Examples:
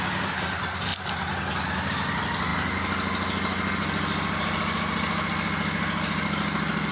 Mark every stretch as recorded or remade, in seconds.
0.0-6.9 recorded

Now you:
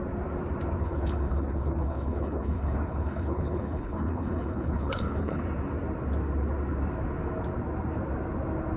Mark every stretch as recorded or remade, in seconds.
0.0-0.8 recorded; 0.8-5.4 remade; 5.4-8.8 recorded

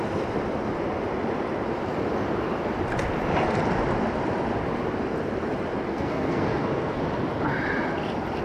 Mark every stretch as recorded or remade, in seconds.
0.0-5.9 recorded; 5.9-7.0 remade; 7.0-8.4 recorded